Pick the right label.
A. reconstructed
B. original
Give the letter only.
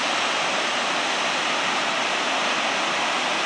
B